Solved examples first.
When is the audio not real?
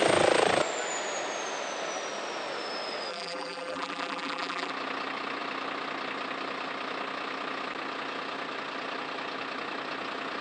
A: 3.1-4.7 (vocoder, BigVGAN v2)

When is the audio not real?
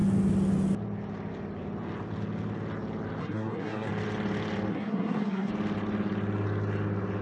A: 3.2-3.9 (codec, SNAC); 4.7-5.5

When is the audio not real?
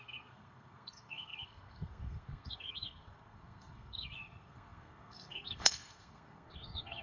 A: 0.0-7.0 (codec, SNAC)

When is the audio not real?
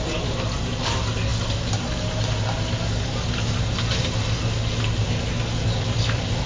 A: none